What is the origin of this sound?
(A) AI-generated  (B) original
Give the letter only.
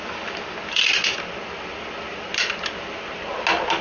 B